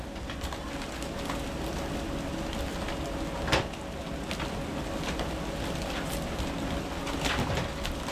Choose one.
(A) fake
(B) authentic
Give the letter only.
B